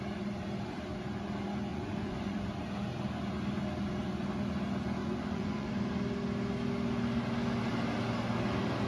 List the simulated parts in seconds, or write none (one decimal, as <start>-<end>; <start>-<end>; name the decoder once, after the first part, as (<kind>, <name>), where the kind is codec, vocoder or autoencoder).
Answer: 1.7-2.4 (vocoder, Vocos); 5.0-5.7